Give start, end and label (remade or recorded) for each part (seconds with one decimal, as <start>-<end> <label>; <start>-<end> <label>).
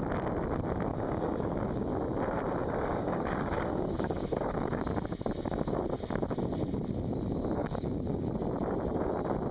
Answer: 0.0-0.9 recorded; 0.9-1.9 remade; 1.9-2.6 recorded; 2.6-4.8 remade; 4.8-7.6 recorded; 7.6-8.3 remade; 8.3-9.5 recorded